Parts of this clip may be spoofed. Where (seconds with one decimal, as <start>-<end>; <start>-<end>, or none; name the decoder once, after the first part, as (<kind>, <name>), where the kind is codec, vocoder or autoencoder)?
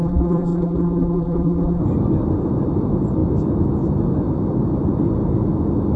0.0-1.8 (vocoder, BigVGAN v2)